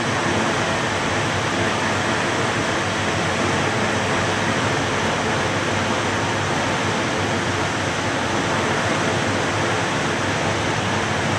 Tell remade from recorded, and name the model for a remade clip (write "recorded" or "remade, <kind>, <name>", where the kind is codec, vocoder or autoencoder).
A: recorded